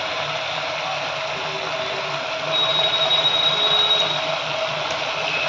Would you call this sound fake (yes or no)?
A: no